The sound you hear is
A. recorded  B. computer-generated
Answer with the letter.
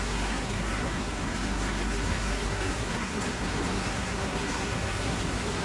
B